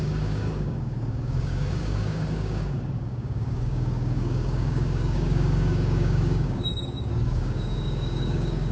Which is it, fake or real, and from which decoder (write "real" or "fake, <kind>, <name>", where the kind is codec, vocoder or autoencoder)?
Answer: fake, codec, DAC